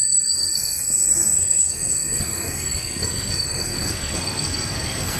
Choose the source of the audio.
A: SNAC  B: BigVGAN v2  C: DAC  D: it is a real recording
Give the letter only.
A